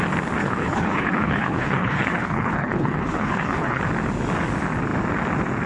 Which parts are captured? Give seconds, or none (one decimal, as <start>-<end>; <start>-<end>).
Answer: 0.0-0.4; 3.8-5.7